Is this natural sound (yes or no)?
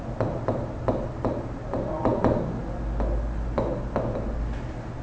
yes